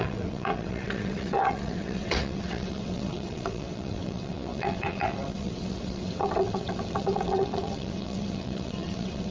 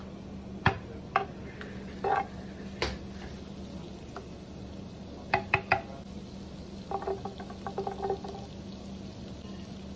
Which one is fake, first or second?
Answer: first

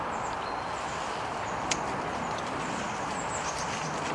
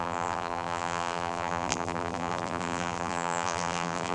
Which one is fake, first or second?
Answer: second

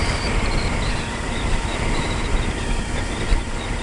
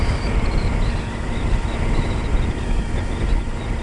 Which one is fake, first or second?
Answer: first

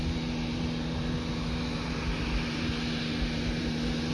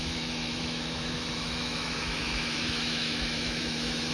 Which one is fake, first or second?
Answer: second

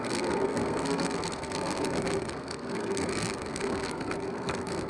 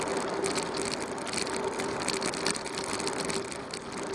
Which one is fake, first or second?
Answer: first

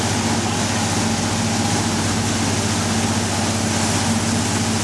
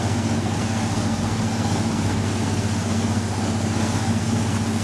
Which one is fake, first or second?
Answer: second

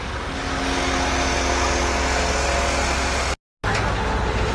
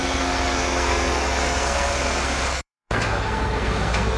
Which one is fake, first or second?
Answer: second